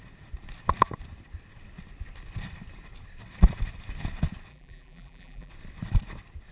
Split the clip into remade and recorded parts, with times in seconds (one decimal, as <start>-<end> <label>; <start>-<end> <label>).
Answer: 0.0-4.5 recorded; 4.5-5.5 remade; 5.5-6.5 recorded